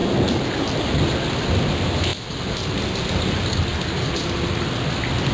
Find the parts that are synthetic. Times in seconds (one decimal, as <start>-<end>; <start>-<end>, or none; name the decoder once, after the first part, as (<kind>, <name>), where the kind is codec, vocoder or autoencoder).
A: none